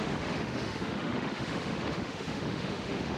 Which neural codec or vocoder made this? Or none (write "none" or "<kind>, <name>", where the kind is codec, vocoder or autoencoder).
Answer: autoencoder, DAC-VAE